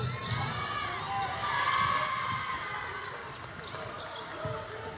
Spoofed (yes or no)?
no